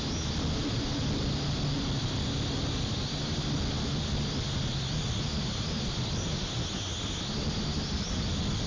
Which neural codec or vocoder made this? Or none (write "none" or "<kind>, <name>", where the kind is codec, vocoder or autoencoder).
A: none